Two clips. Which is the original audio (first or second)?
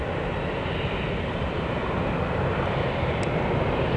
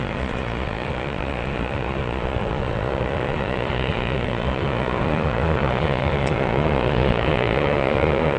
first